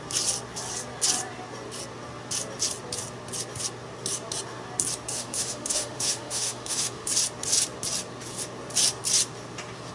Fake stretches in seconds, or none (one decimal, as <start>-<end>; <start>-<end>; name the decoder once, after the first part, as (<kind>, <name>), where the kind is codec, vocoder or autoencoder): 5.1-7.1 (autoencoder, DAC-VAE)